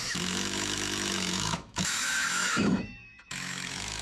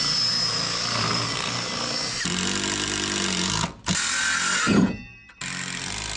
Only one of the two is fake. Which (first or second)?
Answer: first